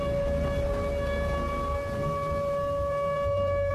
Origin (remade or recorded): recorded